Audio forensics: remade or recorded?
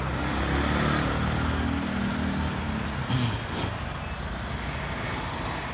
recorded